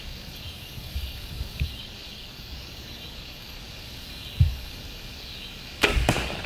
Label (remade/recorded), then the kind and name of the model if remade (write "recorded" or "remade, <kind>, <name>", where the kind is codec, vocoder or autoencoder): remade, codec, DAC